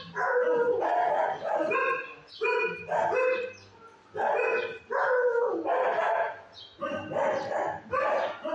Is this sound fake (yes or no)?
no